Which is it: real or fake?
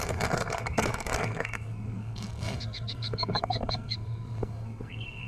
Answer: fake